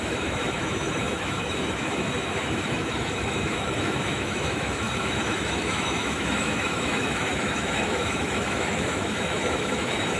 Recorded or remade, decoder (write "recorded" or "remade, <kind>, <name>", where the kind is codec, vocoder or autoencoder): remade, autoencoder, DAC-VAE